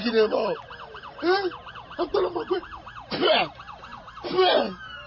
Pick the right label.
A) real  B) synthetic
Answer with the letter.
B